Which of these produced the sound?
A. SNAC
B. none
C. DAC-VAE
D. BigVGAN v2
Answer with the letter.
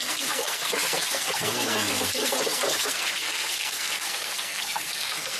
A